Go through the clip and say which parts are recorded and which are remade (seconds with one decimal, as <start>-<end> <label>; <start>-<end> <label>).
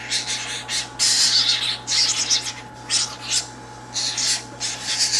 0.0-5.2 recorded